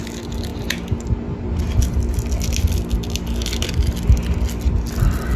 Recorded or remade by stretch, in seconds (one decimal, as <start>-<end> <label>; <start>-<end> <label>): 0.0-5.4 recorded

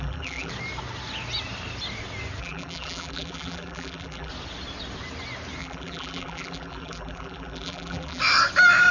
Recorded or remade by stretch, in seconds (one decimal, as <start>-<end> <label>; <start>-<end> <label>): 0.0-0.5 remade; 0.5-2.4 recorded; 2.4-4.3 remade; 4.3-5.6 recorded; 5.6-8.2 remade; 8.2-8.9 recorded

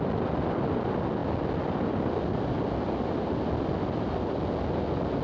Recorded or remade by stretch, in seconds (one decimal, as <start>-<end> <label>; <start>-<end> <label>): 0.0-5.2 recorded

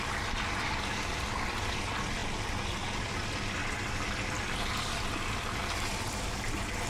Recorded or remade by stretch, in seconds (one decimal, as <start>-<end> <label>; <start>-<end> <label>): 0.0-6.9 recorded

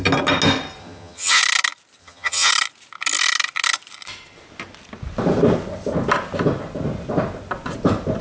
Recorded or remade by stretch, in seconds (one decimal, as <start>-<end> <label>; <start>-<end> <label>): 0.0-0.8 recorded; 0.8-1.4 remade; 1.4-2.0 recorded; 2.0-2.5 remade; 2.5-8.2 recorded

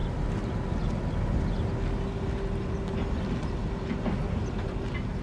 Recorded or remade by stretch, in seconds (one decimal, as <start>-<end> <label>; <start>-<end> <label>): 0.0-5.2 recorded